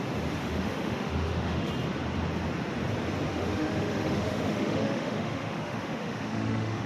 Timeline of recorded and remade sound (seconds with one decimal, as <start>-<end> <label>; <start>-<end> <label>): 0.0-0.4 recorded; 0.4-1.7 remade; 1.7-3.3 recorded; 3.3-6.9 remade